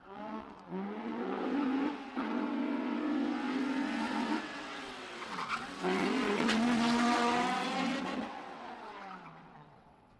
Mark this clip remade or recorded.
remade